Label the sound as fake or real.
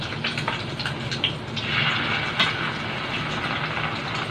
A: real